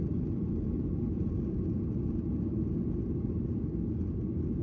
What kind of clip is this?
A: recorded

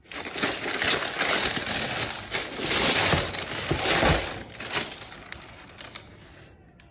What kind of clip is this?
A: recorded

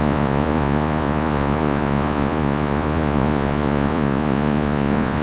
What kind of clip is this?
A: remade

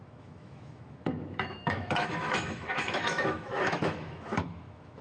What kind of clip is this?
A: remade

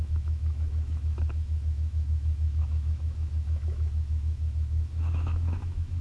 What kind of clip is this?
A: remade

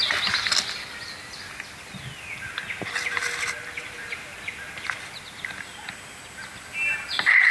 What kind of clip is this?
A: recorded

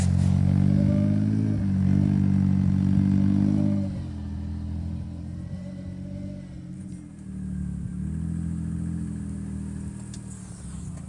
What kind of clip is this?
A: recorded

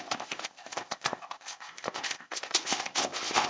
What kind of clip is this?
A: remade